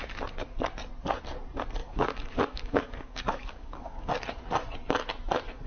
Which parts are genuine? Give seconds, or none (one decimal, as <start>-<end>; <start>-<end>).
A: 0.0-1.8; 4.1-5.7